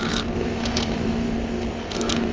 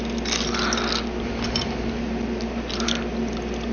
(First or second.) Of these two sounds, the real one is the second